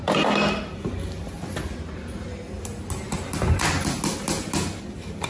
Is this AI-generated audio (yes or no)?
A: no